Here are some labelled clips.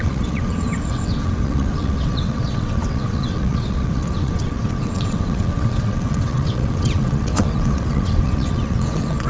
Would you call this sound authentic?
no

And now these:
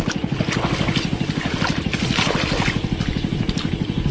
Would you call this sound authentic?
yes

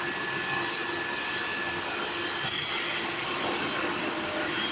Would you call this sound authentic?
yes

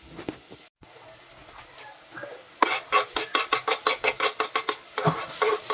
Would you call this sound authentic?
yes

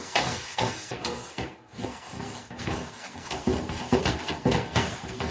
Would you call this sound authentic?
no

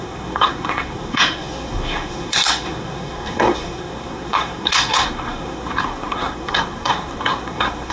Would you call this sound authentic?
no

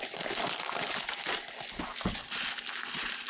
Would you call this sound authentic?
yes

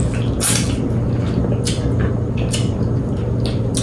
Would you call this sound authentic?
yes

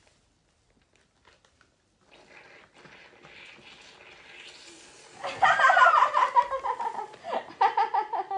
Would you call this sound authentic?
yes